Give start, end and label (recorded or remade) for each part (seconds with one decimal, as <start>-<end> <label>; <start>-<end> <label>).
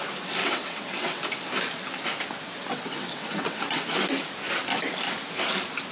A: 0.0-0.4 recorded; 0.4-1.2 remade; 1.2-2.7 recorded; 2.7-3.8 remade; 3.8-5.9 recorded